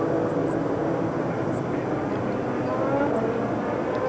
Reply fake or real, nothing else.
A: real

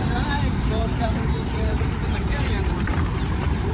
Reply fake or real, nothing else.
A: fake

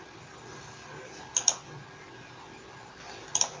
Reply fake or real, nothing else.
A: real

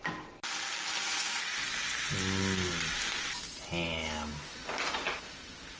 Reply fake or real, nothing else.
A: real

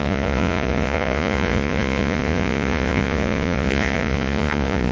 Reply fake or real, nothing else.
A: fake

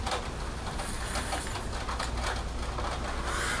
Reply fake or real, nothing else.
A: real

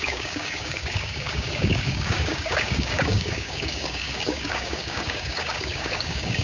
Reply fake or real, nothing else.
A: fake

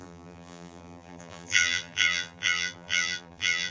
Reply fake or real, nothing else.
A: fake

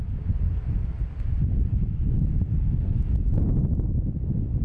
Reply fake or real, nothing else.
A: real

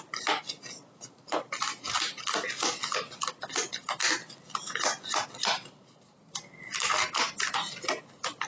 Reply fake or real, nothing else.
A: real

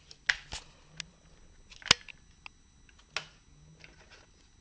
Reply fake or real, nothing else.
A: real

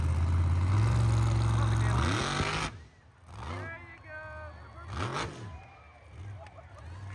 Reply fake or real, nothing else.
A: real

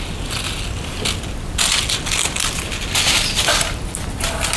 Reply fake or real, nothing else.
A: real